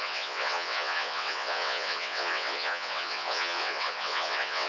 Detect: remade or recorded remade